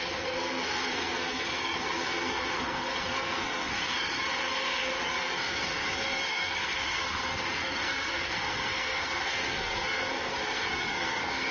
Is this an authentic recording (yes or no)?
no